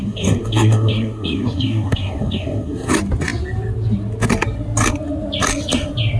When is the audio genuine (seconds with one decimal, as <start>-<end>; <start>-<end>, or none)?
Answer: 2.9-6.2